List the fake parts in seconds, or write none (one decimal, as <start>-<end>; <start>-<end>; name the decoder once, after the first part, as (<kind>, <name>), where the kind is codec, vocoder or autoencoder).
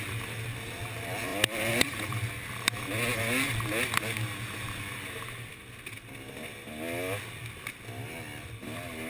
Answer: 1.3-2.5 (vocoder, BigVGAN v2)